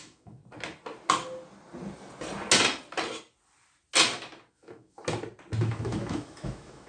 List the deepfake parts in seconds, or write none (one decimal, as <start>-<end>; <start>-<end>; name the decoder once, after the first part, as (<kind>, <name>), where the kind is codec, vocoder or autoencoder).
0.0-0.4 (autoencoder, DAC-VAE); 4.5-5.0; 5.6-6.9